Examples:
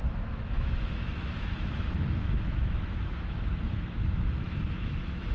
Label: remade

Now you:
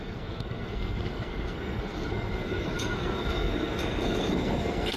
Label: remade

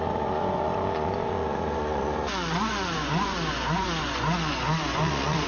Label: remade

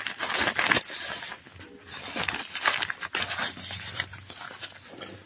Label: recorded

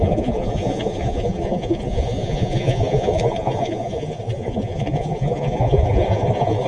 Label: remade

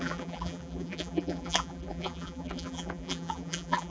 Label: remade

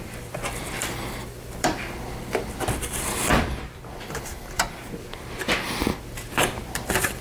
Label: remade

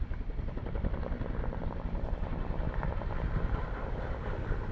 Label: remade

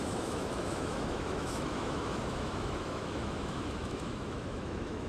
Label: remade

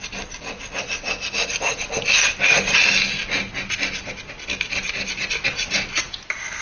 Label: recorded